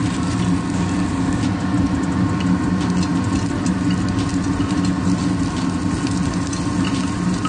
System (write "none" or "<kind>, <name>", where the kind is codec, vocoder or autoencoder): none